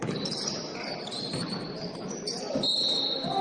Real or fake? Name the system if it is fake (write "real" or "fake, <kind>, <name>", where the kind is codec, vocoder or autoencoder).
real